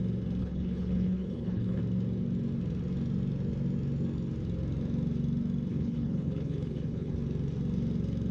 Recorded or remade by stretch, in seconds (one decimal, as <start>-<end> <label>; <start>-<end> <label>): 0.0-0.4 recorded; 0.4-1.8 remade; 1.8-5.7 recorded; 5.7-7.1 remade; 7.1-8.3 recorded